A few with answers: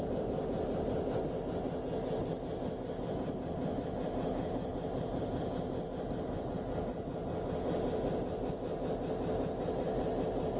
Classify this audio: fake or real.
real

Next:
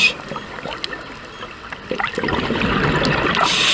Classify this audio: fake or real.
real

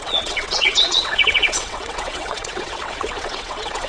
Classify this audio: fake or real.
fake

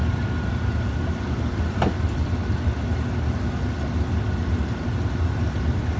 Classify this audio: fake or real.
real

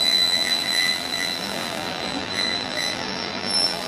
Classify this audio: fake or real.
fake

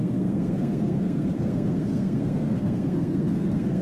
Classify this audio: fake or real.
fake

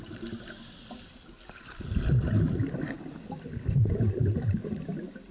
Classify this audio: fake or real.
real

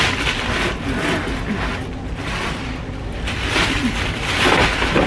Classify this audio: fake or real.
real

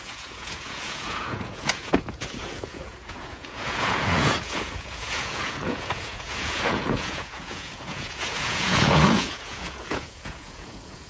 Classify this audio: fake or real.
fake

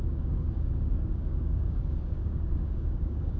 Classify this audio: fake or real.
fake